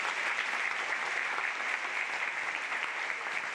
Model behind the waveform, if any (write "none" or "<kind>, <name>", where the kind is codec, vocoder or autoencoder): none